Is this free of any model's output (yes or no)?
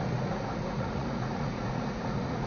no